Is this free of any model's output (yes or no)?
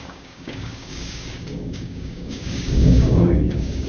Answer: no